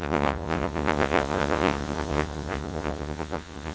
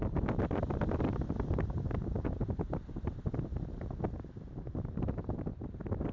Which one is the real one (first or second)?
second